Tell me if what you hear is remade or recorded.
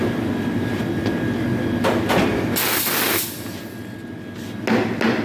recorded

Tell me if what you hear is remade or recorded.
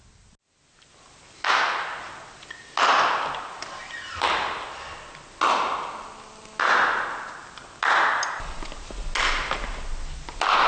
recorded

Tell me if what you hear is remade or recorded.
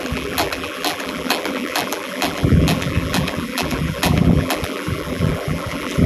remade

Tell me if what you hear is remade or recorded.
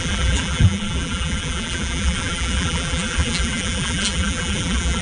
remade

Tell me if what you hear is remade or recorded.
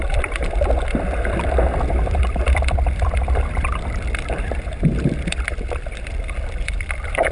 remade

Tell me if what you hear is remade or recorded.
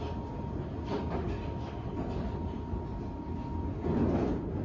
recorded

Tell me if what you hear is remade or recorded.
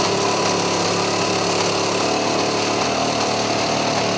recorded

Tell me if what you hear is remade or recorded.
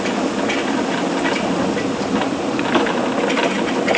recorded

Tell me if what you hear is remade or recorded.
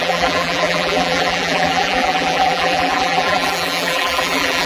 remade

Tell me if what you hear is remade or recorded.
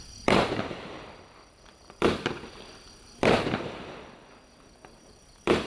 remade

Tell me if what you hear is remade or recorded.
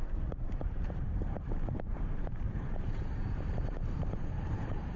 remade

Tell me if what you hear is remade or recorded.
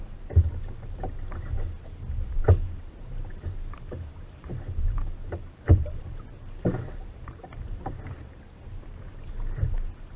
remade